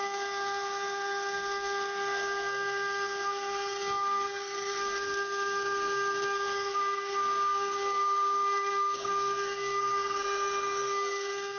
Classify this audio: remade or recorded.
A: remade